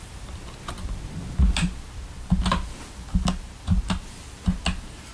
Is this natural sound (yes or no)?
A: yes